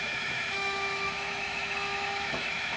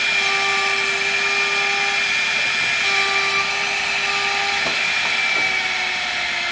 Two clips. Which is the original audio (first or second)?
second